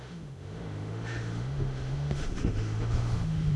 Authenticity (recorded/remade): remade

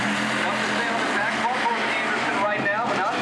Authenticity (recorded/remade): recorded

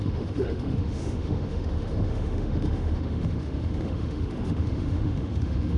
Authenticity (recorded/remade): remade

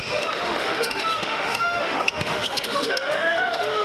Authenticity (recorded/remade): remade